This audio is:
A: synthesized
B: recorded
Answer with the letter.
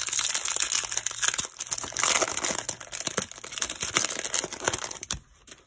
B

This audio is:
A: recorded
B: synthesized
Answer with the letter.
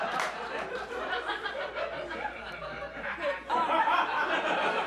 B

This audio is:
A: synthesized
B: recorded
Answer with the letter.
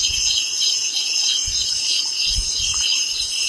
B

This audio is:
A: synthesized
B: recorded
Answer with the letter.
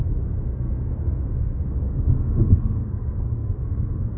A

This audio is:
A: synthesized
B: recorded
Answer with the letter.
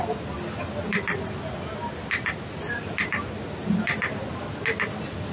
B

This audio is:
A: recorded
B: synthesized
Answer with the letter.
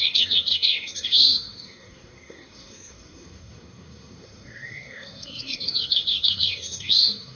B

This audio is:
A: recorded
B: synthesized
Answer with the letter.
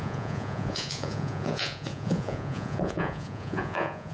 B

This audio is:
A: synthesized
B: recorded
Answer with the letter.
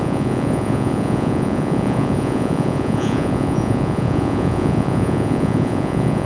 A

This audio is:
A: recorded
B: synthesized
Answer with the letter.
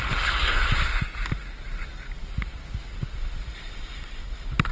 A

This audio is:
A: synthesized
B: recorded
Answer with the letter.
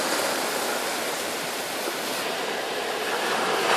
B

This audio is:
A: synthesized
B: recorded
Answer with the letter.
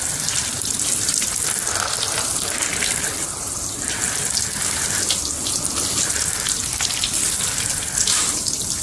B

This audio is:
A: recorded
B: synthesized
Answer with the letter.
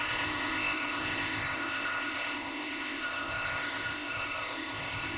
B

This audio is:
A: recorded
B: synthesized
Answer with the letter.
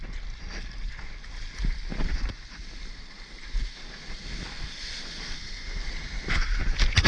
A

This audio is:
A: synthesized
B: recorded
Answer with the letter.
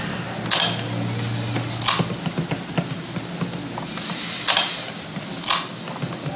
B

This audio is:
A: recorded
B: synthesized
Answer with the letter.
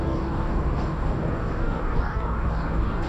B